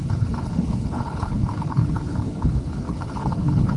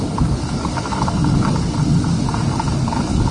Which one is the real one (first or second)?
second